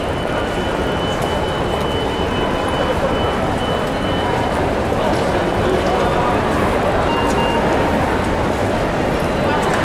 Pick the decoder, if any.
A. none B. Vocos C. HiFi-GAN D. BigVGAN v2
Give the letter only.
A